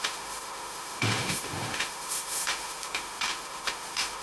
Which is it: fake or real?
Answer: fake